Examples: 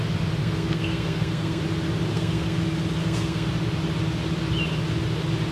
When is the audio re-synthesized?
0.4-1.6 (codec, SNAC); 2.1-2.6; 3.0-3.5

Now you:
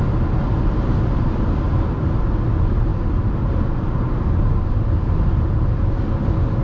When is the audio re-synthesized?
none